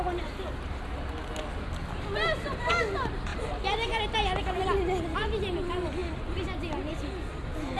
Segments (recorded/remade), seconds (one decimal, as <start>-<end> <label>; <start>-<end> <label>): 0.0-7.8 recorded